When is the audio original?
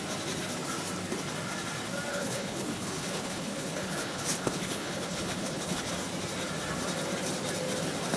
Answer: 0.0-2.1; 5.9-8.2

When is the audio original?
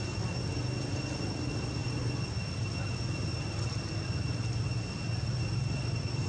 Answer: 0.0-6.3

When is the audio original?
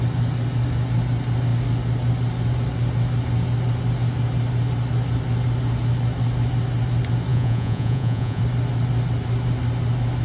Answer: 0.0-7.3; 8.4-10.2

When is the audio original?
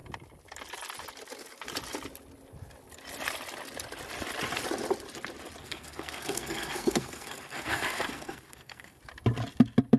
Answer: 0.0-5.6; 9.0-10.0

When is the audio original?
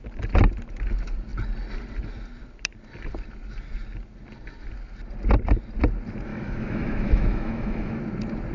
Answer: 0.0-6.3; 8.0-8.5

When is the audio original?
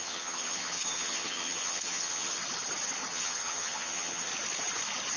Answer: 2.4-3.1; 4.3-5.2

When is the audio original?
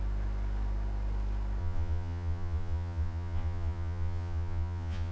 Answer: 0.0-1.6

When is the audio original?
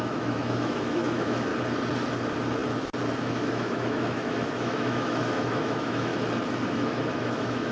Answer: 1.5-3.2; 6.1-6.7